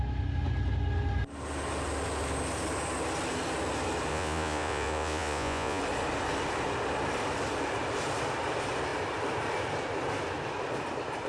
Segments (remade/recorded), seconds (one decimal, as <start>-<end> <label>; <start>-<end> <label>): 0.0-4.1 recorded; 4.1-5.8 remade; 5.8-11.3 recorded